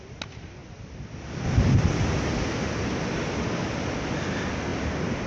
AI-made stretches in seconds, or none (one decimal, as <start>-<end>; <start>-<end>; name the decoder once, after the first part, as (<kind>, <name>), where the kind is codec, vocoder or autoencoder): none